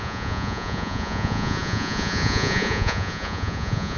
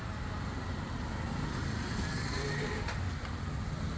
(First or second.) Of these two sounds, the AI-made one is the first